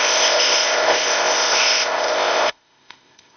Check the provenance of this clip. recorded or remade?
remade